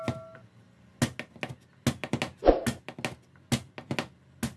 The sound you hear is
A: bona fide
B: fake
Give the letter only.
A